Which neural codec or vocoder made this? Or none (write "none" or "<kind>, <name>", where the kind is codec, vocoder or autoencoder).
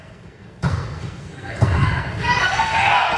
codec, SNAC